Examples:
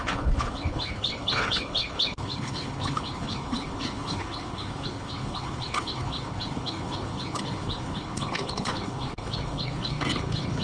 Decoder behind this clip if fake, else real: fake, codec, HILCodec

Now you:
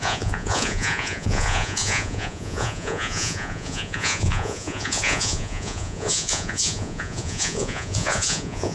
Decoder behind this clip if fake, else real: fake, vocoder, Vocos